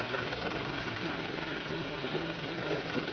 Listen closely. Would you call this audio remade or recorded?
remade